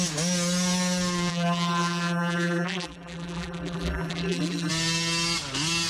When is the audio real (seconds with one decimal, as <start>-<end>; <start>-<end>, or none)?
0.0-1.3; 4.7-5.9

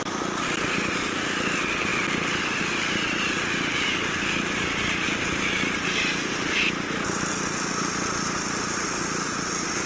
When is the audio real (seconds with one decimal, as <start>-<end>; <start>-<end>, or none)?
0.0-9.9

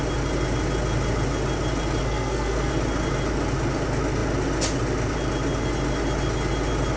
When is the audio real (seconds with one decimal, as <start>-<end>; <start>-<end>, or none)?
0.0-2.0; 2.7-7.0

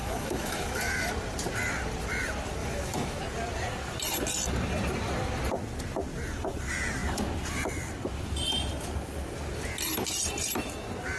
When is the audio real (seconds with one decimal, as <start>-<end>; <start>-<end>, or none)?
1.1-2.6; 3.2-11.2